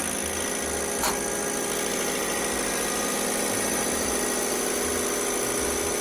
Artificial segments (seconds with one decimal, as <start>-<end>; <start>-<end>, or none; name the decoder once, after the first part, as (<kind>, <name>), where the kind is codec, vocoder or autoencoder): none